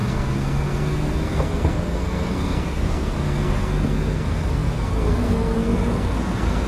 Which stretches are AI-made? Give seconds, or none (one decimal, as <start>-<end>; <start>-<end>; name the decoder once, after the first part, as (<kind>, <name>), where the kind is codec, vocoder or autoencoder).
0.0-6.7 (codec, SNAC)